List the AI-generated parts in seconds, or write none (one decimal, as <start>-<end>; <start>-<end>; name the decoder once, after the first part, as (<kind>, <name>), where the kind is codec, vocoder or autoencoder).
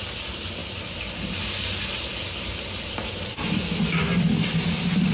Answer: none